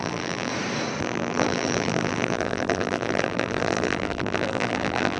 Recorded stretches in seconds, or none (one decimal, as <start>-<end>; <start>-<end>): 0.5-1.0